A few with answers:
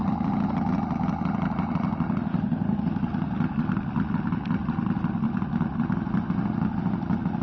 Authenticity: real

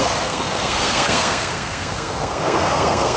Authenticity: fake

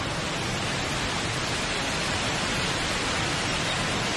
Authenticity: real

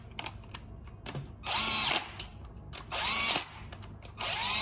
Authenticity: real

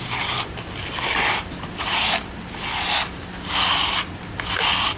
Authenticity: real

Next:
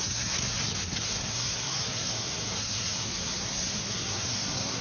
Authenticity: fake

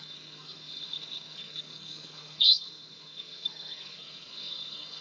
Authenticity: fake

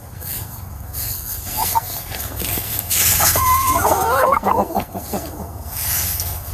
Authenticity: fake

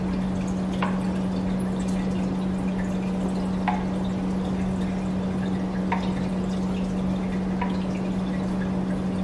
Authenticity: real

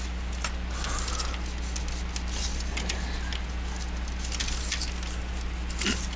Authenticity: real